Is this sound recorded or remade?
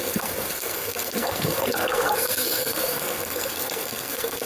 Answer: remade